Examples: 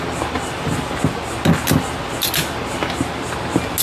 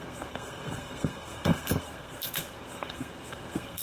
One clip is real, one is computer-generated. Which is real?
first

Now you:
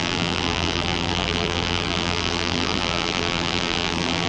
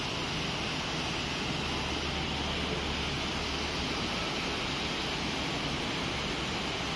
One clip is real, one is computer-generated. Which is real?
second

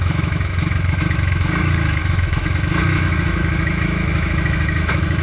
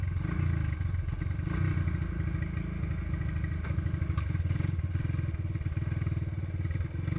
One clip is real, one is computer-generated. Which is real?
second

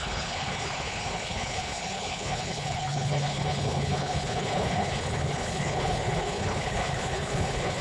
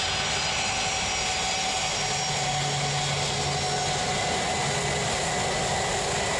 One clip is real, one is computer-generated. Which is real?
second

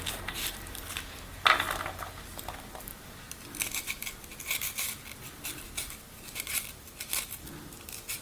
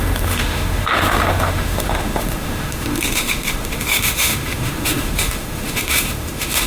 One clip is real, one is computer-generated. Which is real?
first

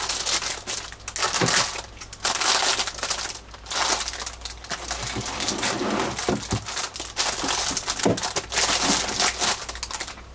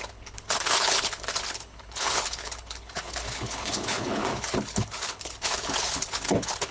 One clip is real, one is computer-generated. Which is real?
first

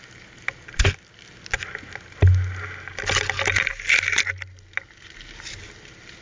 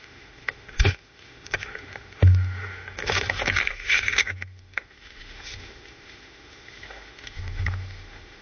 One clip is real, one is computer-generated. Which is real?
first